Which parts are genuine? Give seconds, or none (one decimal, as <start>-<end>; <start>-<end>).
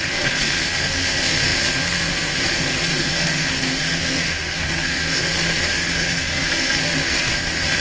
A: none